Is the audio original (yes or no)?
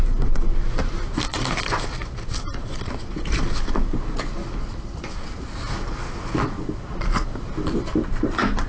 yes